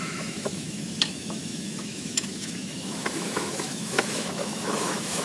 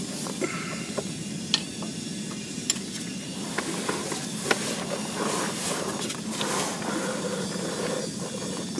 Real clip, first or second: second